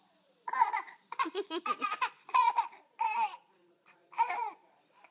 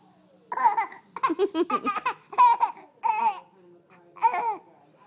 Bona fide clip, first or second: second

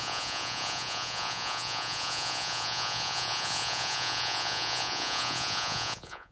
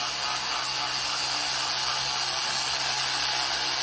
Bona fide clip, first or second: second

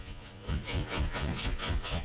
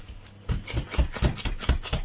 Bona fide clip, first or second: second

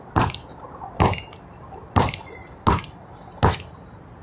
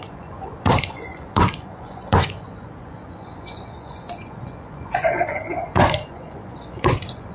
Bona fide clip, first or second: first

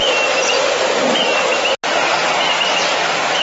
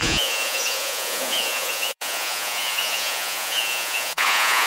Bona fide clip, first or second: first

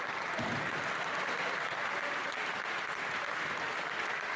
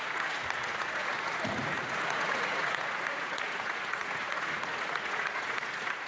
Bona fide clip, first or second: first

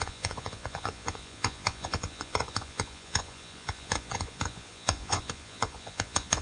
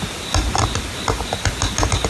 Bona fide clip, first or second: second